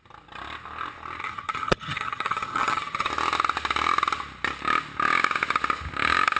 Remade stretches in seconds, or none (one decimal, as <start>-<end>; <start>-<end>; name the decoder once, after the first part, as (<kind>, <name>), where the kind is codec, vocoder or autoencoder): 1.2-3.1 (vocoder, HiFi-GAN)